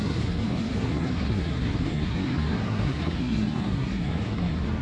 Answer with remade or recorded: remade